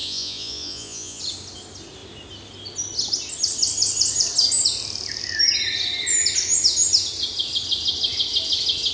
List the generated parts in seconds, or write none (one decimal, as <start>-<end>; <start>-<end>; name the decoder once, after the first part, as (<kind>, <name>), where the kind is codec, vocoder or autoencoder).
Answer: 0.0-1.2 (vocoder, Vocos)

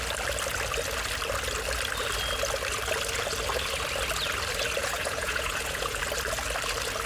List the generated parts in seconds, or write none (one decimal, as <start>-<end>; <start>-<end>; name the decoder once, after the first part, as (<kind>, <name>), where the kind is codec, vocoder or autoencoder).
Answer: 4.8-6.0 (vocoder, Vocos)

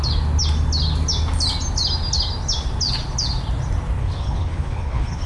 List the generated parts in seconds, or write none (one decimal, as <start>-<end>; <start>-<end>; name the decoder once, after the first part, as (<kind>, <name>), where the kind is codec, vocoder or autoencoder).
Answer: 4.0-5.3 (codec, HILCodec)

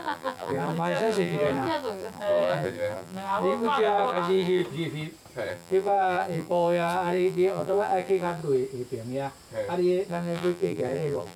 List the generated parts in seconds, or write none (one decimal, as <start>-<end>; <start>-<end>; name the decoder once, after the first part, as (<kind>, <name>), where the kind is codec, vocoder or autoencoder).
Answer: 0.0-4.6 (vocoder, BigVGAN v2); 5.5-8.4; 10.1-11.4

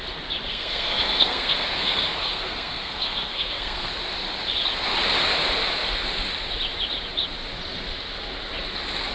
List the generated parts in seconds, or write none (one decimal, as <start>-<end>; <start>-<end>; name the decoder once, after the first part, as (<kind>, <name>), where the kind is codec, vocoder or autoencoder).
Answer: 0.5-3.9 (codec, SNAC)